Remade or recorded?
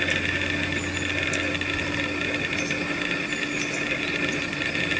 recorded